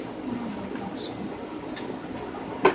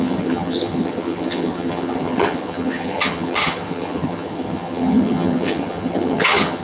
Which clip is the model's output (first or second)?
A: second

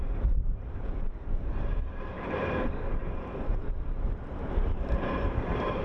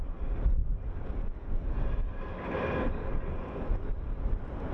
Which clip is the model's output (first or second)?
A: first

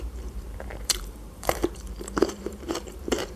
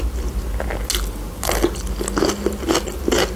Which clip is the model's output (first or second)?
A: first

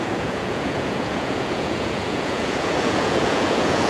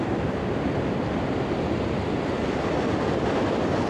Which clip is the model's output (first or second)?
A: first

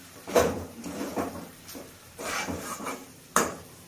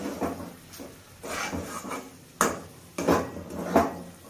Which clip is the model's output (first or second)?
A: first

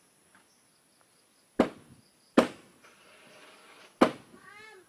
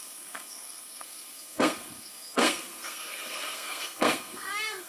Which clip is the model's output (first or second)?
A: second